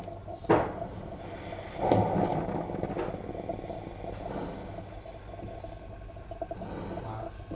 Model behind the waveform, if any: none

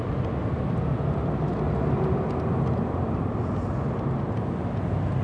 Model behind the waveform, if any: none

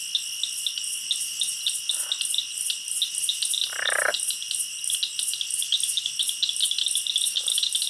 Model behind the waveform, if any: none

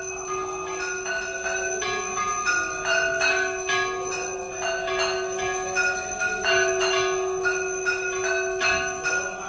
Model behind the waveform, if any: none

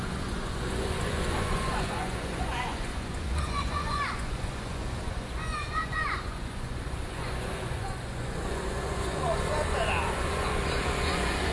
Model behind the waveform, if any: vocoder, Vocos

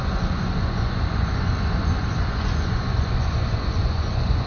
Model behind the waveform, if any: vocoder, Vocos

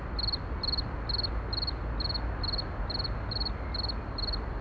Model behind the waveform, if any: none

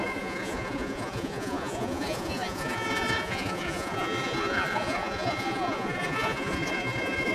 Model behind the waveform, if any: vocoder, Vocos